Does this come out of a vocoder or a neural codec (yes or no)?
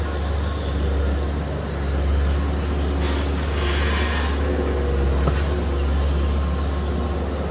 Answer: no